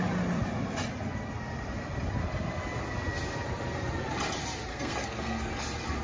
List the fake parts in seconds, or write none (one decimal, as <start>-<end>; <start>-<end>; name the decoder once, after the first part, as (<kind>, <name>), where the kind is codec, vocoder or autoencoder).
4.7-5.5 (codec, SNAC)